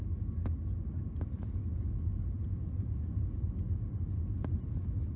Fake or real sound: real